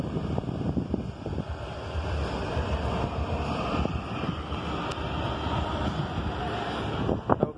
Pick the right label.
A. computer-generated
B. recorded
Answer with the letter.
B